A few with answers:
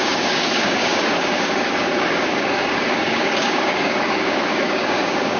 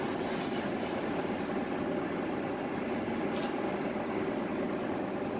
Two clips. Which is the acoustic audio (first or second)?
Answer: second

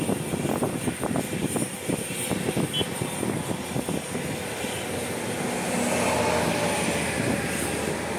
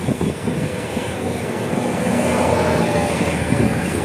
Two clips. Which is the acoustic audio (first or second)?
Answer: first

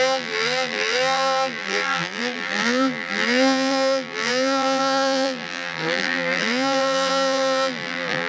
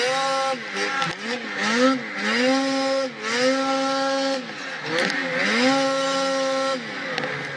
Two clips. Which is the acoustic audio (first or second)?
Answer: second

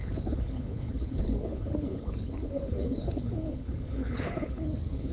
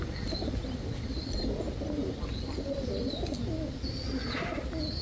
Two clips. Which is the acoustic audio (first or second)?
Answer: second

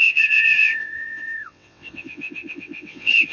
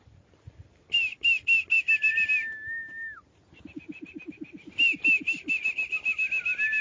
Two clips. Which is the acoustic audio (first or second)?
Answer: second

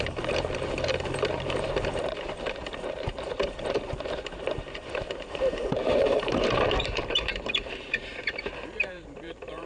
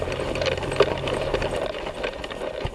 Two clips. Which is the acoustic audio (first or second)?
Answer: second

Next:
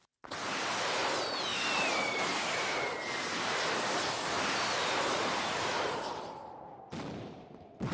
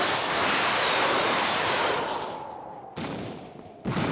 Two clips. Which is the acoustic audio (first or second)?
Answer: first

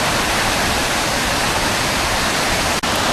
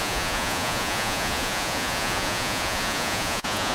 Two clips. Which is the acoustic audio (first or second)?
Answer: first